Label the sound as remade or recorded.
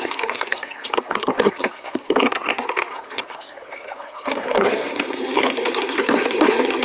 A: remade